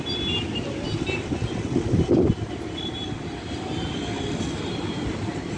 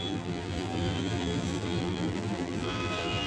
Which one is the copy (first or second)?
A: second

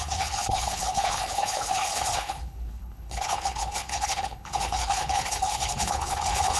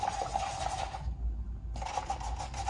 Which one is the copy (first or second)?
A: first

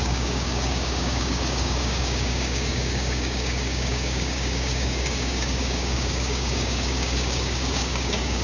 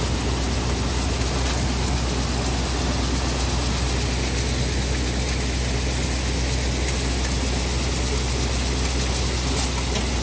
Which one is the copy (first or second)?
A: first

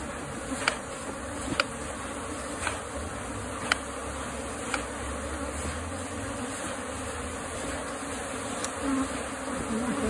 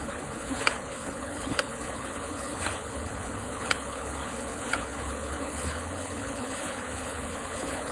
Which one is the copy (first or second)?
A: second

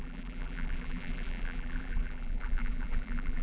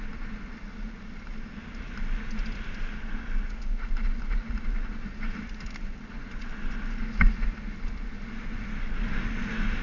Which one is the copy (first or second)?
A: first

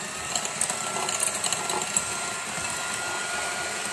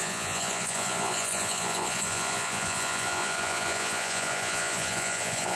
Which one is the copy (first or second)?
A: second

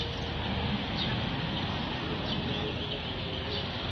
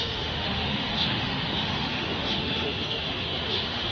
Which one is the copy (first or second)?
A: second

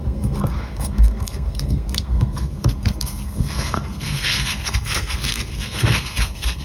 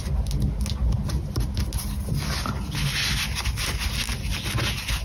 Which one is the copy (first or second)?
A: first